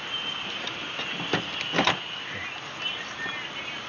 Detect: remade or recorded recorded